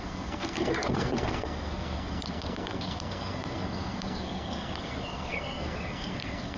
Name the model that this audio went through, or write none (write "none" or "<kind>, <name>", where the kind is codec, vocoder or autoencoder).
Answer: codec, SNAC